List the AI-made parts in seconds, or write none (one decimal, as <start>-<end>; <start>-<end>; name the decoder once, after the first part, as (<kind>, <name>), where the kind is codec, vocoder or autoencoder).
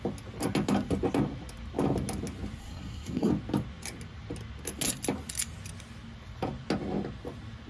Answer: 2.6-3.3 (codec, SNAC)